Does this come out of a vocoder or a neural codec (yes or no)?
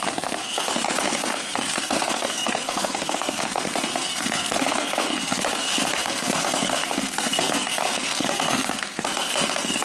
yes